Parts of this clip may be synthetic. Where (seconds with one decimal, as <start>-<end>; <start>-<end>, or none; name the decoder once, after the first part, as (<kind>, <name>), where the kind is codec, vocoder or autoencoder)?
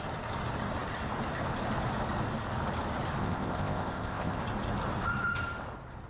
3.2-4.4 (codec, ZipCodec)